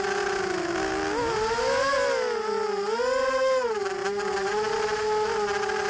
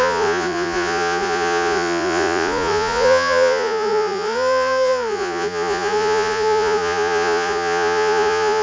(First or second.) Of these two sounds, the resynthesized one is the second